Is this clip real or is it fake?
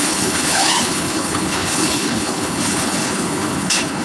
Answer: fake